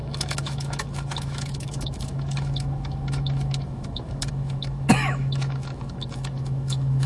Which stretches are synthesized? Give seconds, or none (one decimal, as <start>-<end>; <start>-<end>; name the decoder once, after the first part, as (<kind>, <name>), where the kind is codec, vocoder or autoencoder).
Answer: 0.0-7.1 (autoencoder, DAC-VAE)